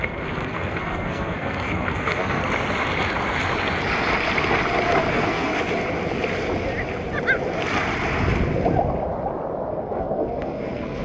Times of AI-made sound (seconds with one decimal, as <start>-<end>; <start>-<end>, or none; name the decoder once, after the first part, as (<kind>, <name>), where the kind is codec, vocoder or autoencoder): 0.0-2.4 (codec, SNAC); 5.1-5.5; 9.7-11.0